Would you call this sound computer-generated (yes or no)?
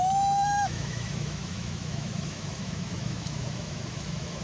yes